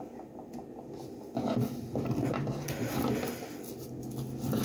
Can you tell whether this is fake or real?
real